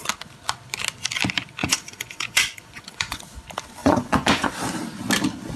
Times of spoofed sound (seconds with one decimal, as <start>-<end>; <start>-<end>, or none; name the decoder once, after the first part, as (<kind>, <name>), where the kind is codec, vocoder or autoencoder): 1.6-3.2 (vocoder, Vocos); 3.8-4.5